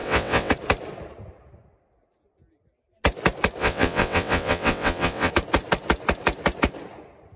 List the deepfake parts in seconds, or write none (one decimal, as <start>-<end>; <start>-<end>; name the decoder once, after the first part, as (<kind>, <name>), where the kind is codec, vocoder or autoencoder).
0.0-0.5 (vocoder, WaveNeXt); 3.6-5.3